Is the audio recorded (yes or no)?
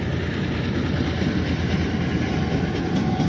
no